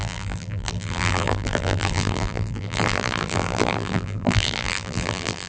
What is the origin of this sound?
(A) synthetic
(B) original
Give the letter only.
A